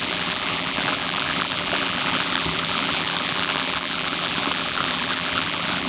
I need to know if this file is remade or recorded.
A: remade